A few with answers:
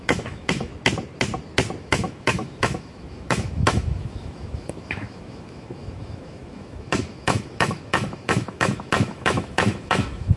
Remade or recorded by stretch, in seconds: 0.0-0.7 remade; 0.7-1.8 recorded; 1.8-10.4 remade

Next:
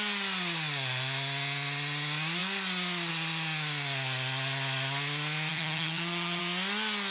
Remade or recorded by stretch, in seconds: 0.0-5.5 recorded; 5.5-6.4 remade; 6.4-7.1 recorded

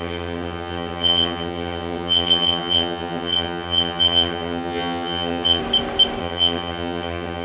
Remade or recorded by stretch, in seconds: 0.0-5.6 remade; 5.6-6.2 recorded; 6.2-7.4 remade

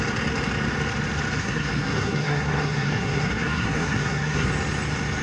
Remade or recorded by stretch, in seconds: 0.0-1.4 recorded; 1.4-4.5 remade; 4.5-5.2 recorded

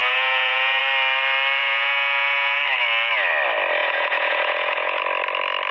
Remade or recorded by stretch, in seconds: 0.0-0.8 remade; 0.8-1.6 recorded; 1.6-2.6 remade; 2.6-3.8 recorded; 3.8-5.0 remade; 5.0-5.7 recorded